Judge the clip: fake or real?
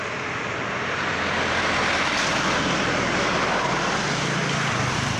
fake